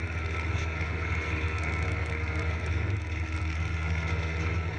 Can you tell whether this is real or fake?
fake